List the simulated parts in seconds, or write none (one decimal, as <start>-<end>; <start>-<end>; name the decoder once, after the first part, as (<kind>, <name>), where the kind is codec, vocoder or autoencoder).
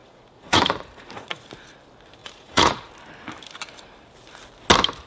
0.0-1.5 (vocoder, Vocos); 2.2-2.9